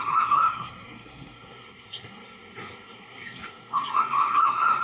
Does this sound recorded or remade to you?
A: remade